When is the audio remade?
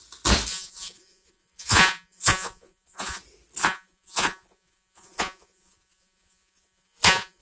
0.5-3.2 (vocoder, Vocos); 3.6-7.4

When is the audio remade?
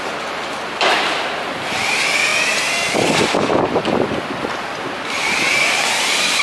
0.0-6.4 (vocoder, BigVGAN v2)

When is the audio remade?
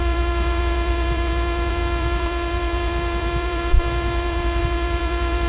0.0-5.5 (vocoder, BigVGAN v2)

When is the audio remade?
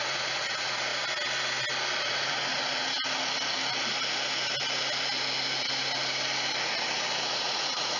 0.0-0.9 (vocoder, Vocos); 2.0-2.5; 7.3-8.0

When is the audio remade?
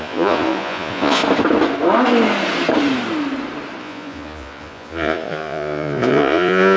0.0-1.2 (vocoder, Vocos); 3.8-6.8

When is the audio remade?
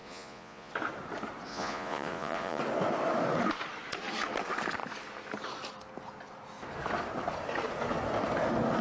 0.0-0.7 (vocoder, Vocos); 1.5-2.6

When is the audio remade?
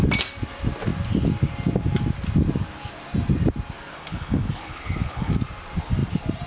3.9-5.3 (codec, HILCodec)